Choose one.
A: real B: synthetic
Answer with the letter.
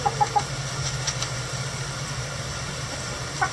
A